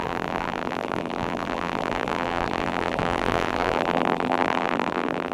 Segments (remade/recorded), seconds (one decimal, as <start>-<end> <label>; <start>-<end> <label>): 0.0-5.3 remade